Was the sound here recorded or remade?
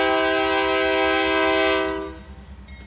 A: recorded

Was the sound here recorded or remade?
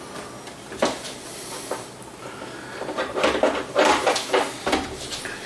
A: recorded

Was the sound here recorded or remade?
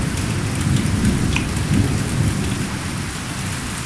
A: recorded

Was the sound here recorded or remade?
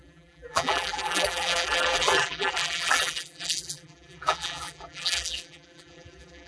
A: remade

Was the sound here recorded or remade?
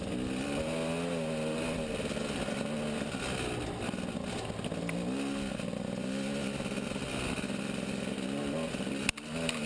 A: recorded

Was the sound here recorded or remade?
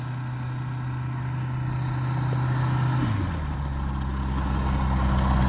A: recorded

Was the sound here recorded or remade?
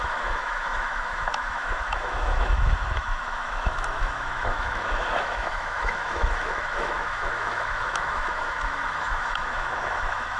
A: remade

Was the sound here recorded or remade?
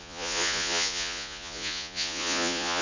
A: remade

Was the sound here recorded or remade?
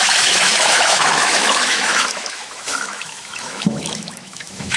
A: remade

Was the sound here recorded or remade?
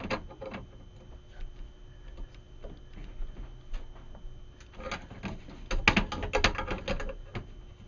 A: recorded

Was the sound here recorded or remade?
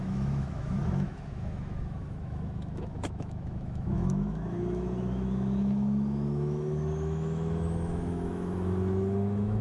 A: remade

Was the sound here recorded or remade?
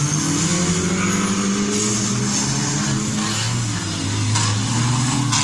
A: recorded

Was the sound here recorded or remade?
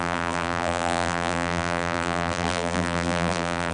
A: remade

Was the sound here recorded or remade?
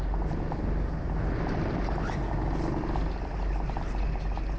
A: recorded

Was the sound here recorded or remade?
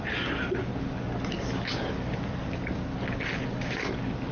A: recorded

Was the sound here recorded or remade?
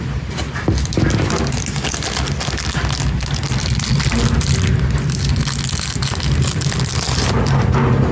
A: recorded